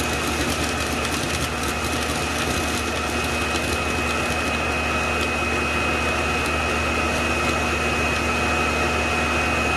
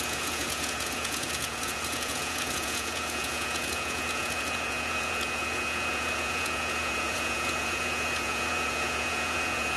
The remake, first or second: second